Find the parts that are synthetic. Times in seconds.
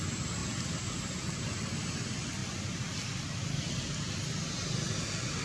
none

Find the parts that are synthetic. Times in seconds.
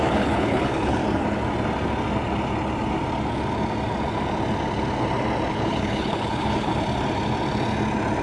0.0-1.0; 5.5-6.7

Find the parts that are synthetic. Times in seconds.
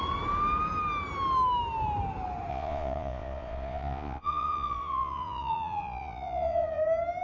2.5-6.8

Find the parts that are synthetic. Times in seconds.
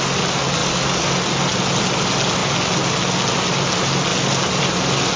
0.6-1.1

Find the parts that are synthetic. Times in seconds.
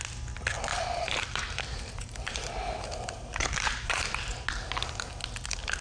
0.7-4.2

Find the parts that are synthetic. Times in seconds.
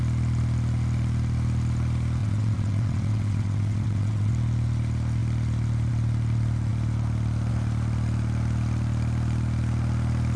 2.2-4.3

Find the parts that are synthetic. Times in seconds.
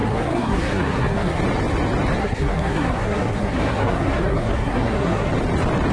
0.0-1.4; 2.2-5.3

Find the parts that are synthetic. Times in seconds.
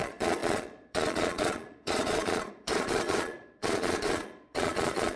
0.0-5.2